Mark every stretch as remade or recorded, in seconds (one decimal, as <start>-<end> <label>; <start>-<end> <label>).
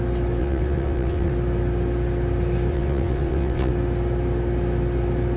0.0-0.4 recorded; 0.4-1.3 remade; 1.3-2.7 recorded; 2.7-3.7 remade; 3.7-5.4 recorded